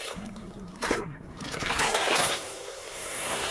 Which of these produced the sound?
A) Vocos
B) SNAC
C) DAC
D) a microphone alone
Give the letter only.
B